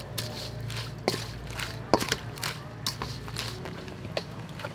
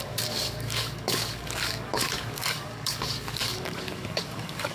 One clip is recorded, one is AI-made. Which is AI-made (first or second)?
second